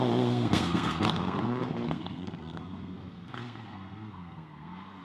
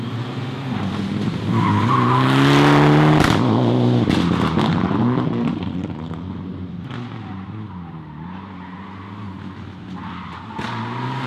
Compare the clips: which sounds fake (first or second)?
first